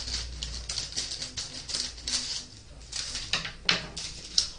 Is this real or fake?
real